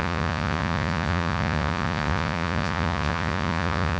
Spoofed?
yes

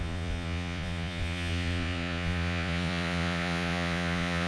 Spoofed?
yes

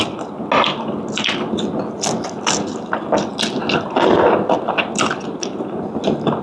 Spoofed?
no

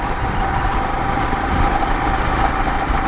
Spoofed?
no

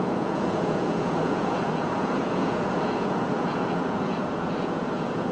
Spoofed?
yes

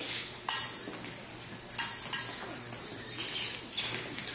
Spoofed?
no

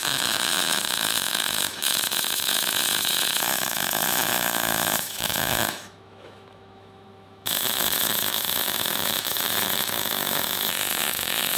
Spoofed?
yes